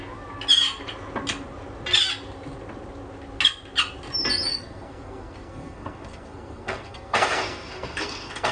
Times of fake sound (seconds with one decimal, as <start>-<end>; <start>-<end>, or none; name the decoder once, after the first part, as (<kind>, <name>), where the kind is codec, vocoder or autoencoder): 4.5-8.5 (codec, SNAC)